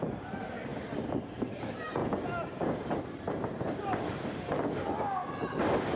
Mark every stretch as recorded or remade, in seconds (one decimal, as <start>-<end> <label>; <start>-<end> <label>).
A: 0.0-6.0 recorded